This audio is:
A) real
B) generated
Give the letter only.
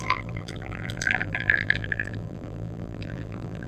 B